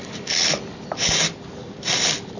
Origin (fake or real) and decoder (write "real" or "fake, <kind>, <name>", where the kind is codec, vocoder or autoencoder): real